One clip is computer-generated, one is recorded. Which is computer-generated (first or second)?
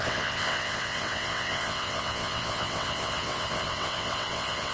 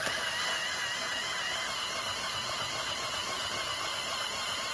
first